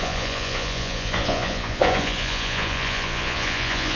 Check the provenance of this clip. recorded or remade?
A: remade